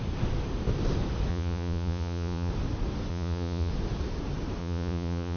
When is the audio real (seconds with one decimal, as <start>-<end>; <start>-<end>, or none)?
0.0-1.3; 2.5-3.1; 3.7-4.6